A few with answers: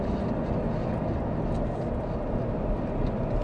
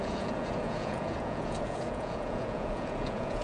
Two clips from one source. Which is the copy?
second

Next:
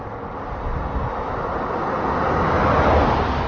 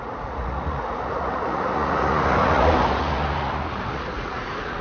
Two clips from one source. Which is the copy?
second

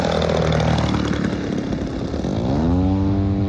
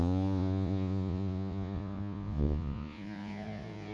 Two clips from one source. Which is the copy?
second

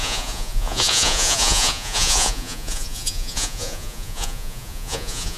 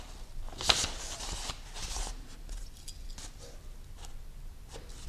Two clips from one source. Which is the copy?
first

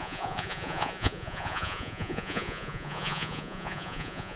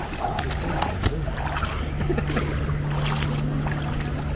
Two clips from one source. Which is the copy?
first